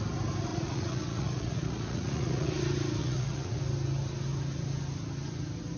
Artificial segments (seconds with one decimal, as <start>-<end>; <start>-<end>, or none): 0.5-2.6; 3.0-3.6